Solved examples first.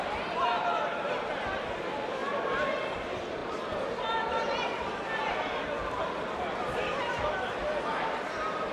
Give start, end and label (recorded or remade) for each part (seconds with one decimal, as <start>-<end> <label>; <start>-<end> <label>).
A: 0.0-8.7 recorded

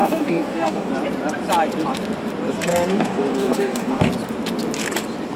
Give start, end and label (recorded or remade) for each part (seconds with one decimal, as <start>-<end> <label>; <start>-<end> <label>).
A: 0.0-0.9 remade; 0.9-2.7 recorded; 2.7-4.1 remade; 4.1-5.4 recorded

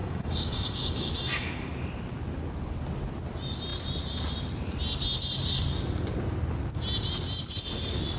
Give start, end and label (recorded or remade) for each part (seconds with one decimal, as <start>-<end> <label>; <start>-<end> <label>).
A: 0.0-1.1 remade; 1.1-8.2 recorded

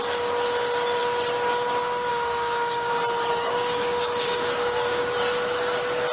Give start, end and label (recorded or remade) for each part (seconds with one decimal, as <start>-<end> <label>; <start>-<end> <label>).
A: 0.0-2.1 recorded; 2.1-2.9 remade; 2.9-3.3 recorded; 3.3-5.0 remade; 5.0-6.1 recorded